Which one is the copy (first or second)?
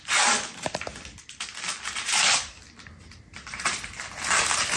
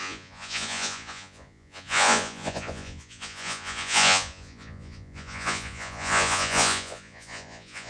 second